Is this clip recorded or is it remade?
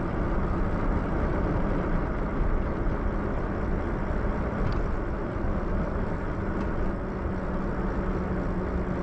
recorded